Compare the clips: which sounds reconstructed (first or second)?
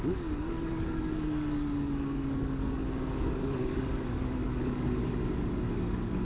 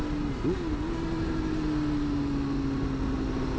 first